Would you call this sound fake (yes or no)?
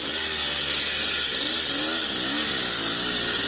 no